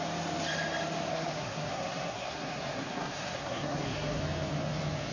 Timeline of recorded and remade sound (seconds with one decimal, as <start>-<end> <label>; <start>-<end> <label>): 0.0-1.1 recorded; 1.1-4.2 remade; 4.2-5.1 recorded